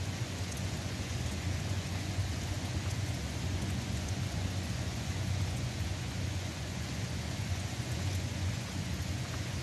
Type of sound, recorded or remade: remade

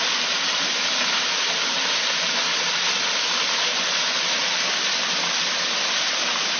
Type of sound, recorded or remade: recorded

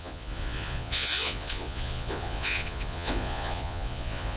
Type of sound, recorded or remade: remade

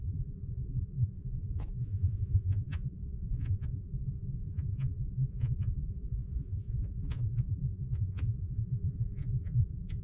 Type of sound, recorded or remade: remade